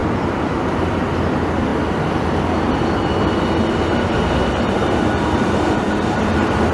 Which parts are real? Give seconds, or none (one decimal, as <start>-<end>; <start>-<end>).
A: 0.0-6.7